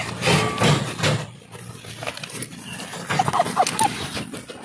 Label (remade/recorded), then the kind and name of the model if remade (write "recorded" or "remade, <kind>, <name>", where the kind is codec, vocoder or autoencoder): recorded